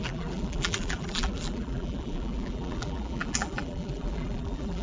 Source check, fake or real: fake